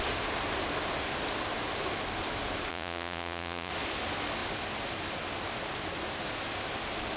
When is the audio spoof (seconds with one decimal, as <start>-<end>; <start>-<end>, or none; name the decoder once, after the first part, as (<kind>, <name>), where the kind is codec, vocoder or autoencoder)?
2.7-3.7 (vocoder, Vocos)